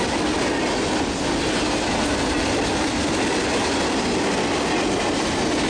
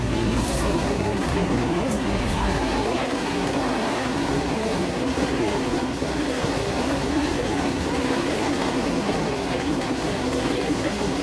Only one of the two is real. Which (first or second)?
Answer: first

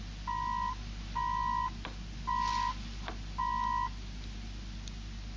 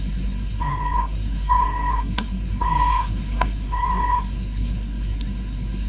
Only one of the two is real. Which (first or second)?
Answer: first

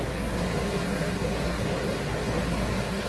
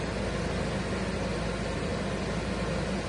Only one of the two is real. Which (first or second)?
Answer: second